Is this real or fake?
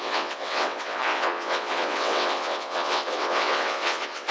fake